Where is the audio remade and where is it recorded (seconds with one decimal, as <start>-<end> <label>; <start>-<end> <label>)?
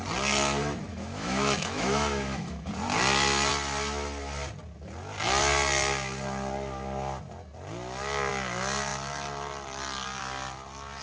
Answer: 0.0-0.9 recorded; 0.9-2.7 remade; 2.7-11.0 recorded